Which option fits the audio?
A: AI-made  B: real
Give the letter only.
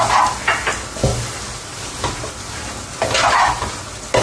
B